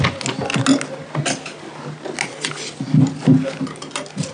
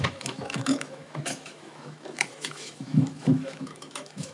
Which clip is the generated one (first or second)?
second